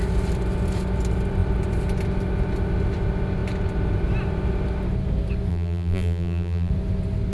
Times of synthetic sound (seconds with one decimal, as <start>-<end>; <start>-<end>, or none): 5.5-6.7